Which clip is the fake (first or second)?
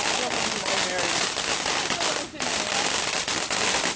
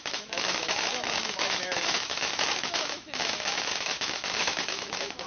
second